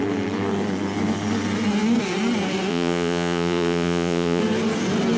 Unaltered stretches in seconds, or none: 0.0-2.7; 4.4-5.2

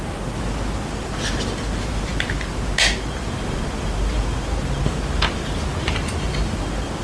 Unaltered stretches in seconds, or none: 0.0-7.0

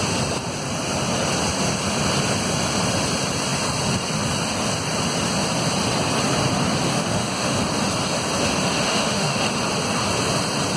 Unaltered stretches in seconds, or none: 0.0-6.9; 7.6-8.9; 9.4-10.8

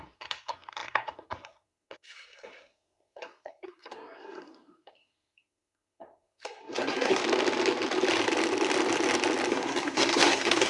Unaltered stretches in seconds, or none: 7.2-9.5

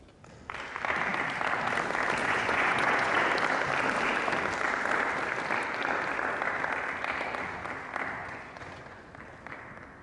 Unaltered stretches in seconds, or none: 0.0-2.2; 3.2-8.2; 9.1-10.0